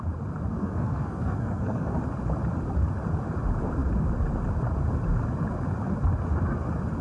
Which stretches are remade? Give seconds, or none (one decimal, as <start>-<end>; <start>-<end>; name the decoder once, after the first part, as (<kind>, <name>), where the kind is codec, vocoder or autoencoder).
0.5-2.0 (codec, SNAC)